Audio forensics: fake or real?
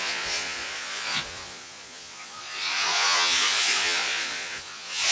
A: fake